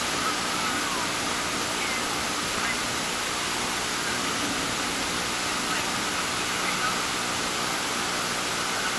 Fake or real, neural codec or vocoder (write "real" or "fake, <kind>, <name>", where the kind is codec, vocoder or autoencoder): real